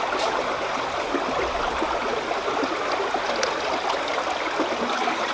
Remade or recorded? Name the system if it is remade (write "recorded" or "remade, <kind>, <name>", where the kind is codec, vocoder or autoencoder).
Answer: recorded